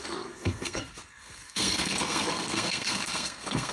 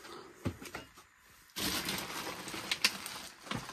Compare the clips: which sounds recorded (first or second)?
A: second